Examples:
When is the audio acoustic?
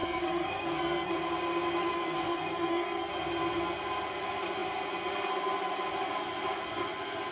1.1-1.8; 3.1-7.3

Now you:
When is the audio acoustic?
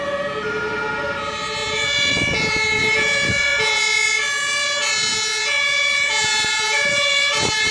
0.0-1.6; 3.8-5.1; 7.3-7.7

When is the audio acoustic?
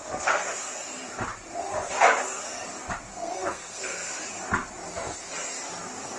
0.7-3.1; 4.2-6.2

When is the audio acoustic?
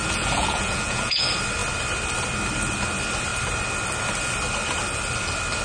1.2-5.6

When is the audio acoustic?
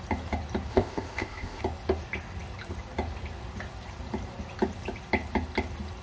0.0-0.7; 1.6-6.0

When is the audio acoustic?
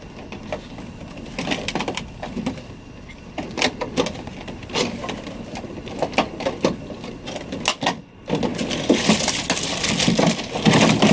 0.0-11.1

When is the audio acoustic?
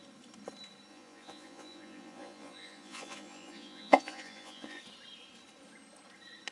0.0-0.9; 4.8-6.5